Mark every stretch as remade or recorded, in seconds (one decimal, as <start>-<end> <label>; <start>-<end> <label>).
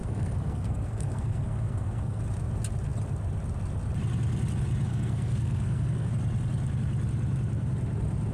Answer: 0.0-2.2 remade; 2.2-4.9 recorded; 4.9-6.1 remade; 6.1-8.3 recorded